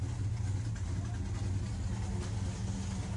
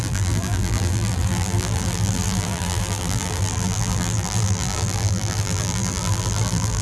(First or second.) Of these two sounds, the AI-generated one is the second